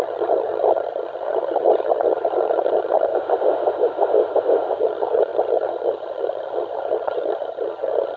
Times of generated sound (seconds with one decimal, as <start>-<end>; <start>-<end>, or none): 0.0-3.1; 4.8-8.2